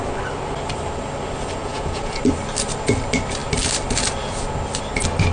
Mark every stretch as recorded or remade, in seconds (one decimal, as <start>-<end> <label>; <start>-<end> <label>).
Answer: 0.0-1.6 recorded; 1.6-2.2 remade; 2.2-5.3 recorded